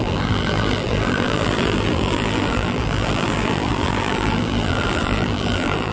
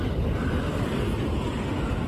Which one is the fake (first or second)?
first